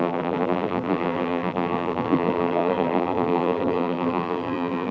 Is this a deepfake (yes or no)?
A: yes